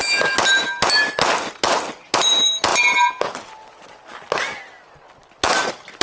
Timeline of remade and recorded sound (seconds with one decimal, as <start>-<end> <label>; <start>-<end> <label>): 0.0-6.0 recorded